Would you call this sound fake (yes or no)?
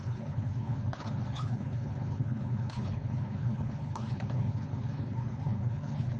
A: yes